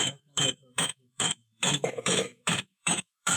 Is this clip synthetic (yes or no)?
yes